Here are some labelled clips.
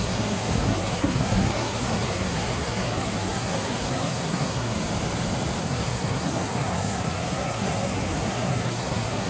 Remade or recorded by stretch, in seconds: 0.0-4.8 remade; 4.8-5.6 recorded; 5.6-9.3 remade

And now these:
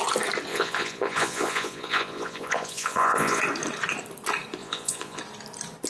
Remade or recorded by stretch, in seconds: 0.0-0.5 recorded; 0.5-3.4 remade; 3.4-4.6 recorded; 4.6-5.2 remade; 5.2-5.9 recorded

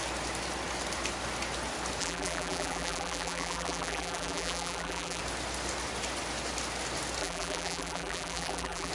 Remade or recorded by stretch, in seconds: 0.0-2.0 recorded; 2.0-5.2 remade; 5.2-7.2 recorded; 7.2-8.9 remade